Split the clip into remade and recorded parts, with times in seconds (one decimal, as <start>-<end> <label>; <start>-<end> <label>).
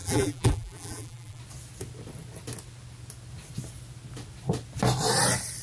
0.0-1.4 remade; 1.4-5.6 recorded